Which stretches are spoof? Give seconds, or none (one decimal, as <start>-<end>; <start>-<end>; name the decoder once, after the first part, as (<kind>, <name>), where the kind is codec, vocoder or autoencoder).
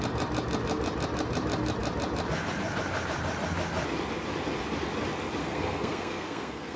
5.4-6.8 (codec, SNAC)